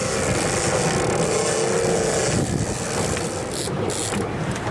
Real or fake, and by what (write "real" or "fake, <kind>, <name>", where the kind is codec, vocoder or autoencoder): real